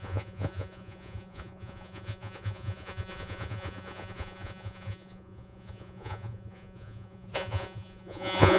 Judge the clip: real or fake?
fake